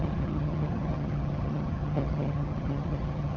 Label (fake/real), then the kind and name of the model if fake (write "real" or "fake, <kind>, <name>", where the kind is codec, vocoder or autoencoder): fake, vocoder, HiFi-GAN